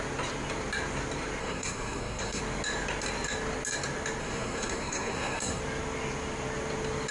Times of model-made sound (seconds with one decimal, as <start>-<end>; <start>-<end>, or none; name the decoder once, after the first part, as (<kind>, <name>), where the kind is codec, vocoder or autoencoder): 1.4-2.4 (codec, SNAC); 4.2-5.6